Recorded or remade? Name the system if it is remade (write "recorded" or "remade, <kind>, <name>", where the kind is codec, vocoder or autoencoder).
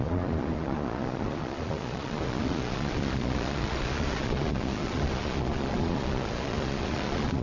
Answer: remade, vocoder, Vocos